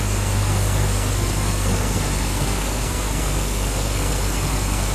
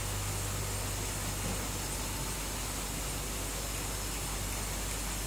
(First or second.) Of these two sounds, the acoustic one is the second